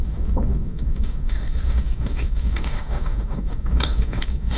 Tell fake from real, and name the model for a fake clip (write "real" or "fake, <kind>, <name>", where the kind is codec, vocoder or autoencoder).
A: fake, codec, DAC